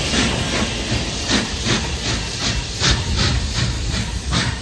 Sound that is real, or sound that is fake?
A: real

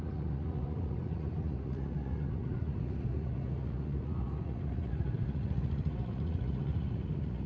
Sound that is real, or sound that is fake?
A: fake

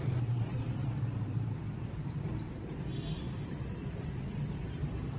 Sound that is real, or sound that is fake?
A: fake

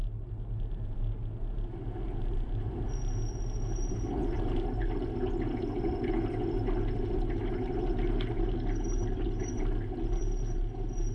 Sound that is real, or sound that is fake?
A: real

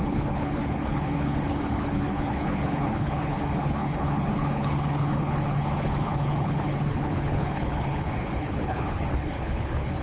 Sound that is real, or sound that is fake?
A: fake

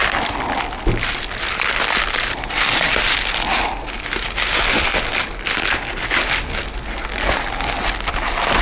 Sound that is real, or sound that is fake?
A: real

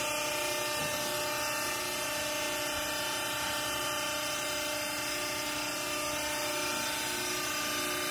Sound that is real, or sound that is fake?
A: real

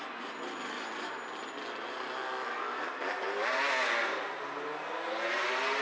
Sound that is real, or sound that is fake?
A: real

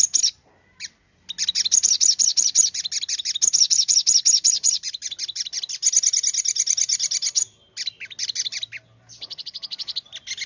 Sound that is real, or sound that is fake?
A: real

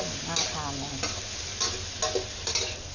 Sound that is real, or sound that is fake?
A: real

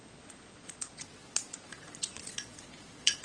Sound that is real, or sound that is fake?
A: fake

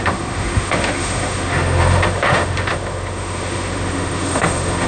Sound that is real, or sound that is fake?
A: fake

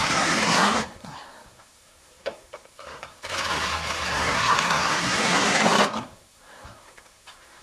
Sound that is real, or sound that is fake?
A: fake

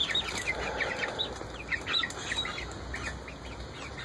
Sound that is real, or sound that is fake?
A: real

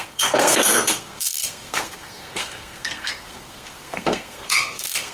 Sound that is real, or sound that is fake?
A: fake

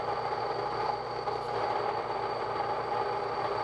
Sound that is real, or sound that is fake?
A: real